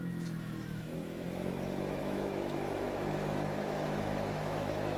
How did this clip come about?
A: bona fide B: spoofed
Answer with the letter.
B